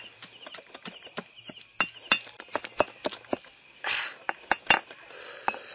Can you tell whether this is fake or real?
real